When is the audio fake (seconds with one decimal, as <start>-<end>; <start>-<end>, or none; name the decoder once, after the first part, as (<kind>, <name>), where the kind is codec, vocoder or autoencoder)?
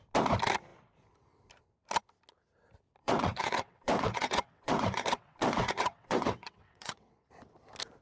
3.0-7.3 (vocoder, WaveNeXt)